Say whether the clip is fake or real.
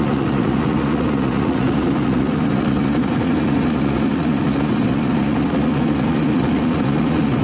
fake